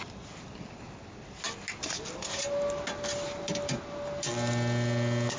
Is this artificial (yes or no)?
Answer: no